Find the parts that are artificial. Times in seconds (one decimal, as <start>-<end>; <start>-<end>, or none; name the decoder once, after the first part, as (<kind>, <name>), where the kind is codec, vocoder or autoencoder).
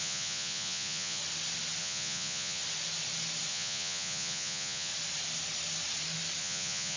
0.0-1.2 (vocoder, Vocos); 1.8-2.6; 3.5-4.9; 6.4-7.0